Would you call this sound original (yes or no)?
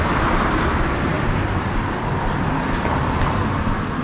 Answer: yes